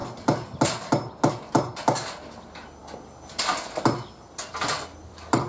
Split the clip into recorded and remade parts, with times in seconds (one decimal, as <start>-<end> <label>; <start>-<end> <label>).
0.0-5.5 recorded